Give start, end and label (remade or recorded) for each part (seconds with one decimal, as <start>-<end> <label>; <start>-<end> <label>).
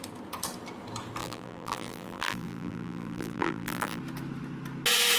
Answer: 0.0-1.2 recorded; 1.2-4.0 remade; 4.0-5.2 recorded